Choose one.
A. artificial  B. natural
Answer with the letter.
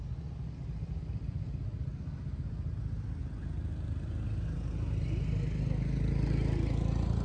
B